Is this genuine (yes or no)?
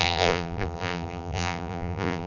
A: no